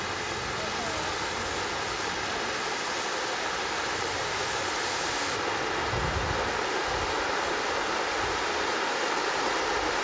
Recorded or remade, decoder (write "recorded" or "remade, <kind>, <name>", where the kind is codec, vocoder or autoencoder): recorded